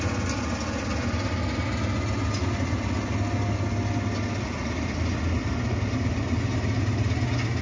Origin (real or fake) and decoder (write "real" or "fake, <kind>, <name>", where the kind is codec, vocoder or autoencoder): real